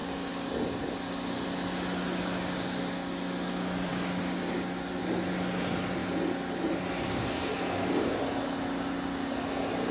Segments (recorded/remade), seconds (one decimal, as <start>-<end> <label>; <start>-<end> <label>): 0.0-0.5 remade; 0.5-3.9 recorded; 3.9-5.0 remade; 5.0-7.5 recorded; 7.5-8.2 remade; 8.2-9.9 recorded